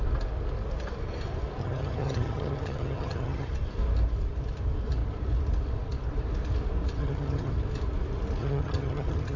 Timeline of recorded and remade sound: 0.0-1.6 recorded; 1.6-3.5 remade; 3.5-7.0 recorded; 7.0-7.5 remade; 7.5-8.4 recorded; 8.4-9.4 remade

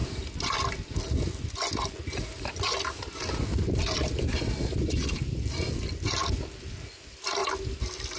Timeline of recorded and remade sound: 0.0-8.2 recorded

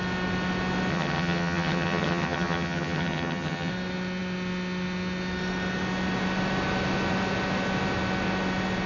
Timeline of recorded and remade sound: 0.0-0.9 recorded; 0.9-3.7 remade; 3.7-8.9 recorded

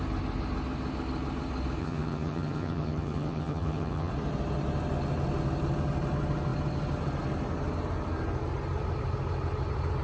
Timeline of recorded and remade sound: 0.0-1.8 recorded; 1.8-4.1 remade; 4.1-10.0 recorded

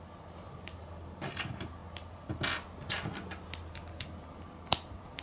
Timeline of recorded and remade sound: 0.0-5.2 recorded

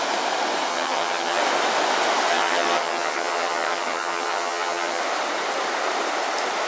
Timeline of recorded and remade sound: 0.0-0.7 recorded; 0.7-1.4 remade; 1.4-2.3 recorded; 2.3-5.0 remade; 5.0-6.7 recorded